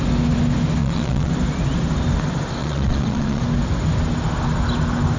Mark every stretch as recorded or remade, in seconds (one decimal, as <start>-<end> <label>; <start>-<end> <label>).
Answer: 0.0-0.8 recorded; 0.8-1.3 remade; 1.3-2.6 recorded; 2.6-3.4 remade; 3.4-5.2 recorded